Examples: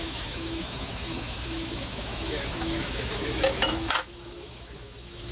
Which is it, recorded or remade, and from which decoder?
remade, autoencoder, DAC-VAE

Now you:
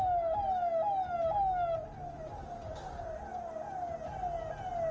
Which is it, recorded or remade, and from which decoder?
recorded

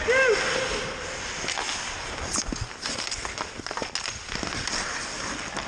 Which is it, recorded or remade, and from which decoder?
recorded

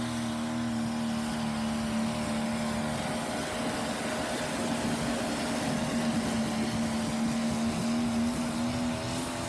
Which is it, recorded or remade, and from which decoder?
recorded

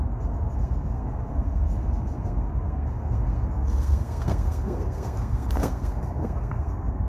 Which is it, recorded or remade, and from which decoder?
remade, codec, SNAC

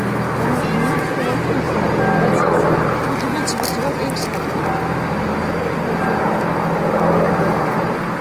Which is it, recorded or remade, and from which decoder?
recorded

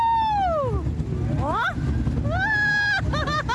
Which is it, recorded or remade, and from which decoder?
recorded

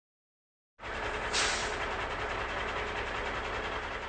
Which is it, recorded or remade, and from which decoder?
recorded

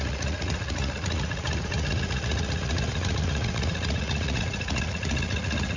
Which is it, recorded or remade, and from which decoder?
remade, vocoder, Vocos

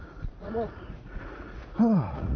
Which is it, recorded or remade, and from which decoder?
remade, vocoder, Vocos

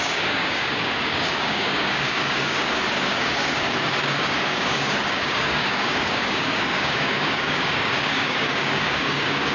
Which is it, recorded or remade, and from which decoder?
remade, codec, DAC